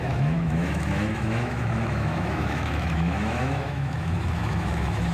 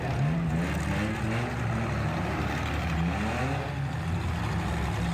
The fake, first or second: first